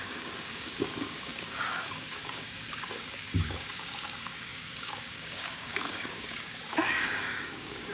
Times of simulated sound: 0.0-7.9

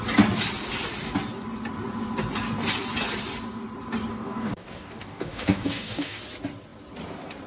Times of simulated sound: 4.1-6.2

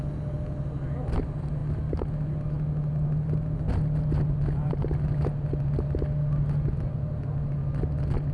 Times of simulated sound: none

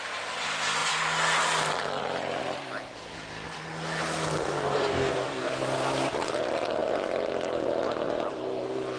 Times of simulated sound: 4.4-5.6

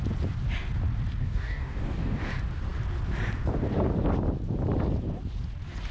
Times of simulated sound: 1.2-2.3